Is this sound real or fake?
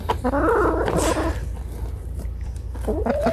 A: fake